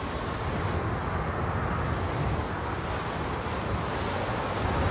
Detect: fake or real real